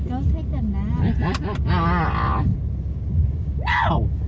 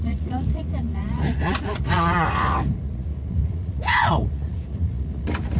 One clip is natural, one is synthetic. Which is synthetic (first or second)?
second